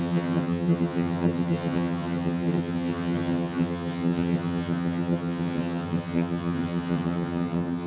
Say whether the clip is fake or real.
fake